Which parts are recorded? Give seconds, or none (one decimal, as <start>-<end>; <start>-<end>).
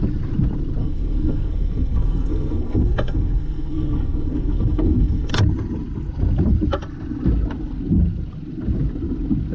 0.0-0.8; 5.3-9.5